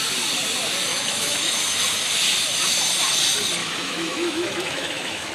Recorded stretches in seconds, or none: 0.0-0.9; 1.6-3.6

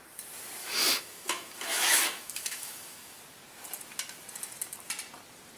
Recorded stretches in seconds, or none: 0.0-0.6; 3.2-5.6

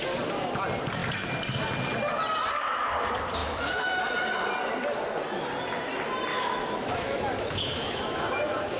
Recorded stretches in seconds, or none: 0.0-3.4; 4.0-6.3

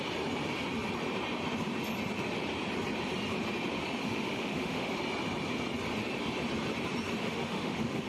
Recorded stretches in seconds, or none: 0.0-4.0; 5.0-7.2